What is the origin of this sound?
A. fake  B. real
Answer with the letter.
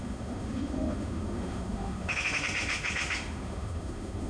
A